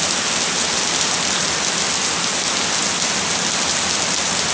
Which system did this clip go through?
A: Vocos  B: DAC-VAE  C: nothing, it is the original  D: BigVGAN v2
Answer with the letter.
C